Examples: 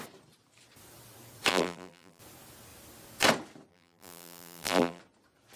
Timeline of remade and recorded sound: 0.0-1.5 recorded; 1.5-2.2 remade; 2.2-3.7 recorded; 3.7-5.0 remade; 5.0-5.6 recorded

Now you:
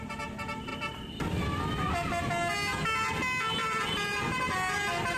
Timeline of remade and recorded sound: 0.0-0.7 recorded; 0.7-1.9 remade; 1.9-3.6 recorded; 3.6-4.2 remade; 4.2-5.2 recorded

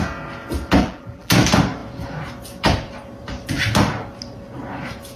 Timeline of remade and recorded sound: 0.0-0.8 recorded; 0.8-1.3 remade; 1.3-5.2 recorded

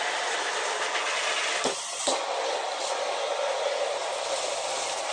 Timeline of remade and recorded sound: 0.0-4.0 recorded; 4.0-5.1 remade

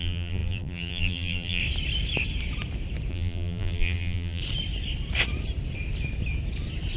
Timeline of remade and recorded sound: 0.0-1.6 remade; 1.6-3.1 recorded; 3.1-4.4 remade; 4.4-7.0 recorded

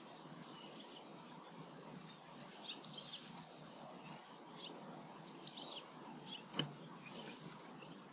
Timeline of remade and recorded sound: 0.0-8.1 recorded

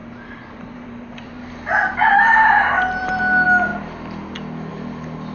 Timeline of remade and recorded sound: 0.0-3.2 remade; 3.2-5.3 recorded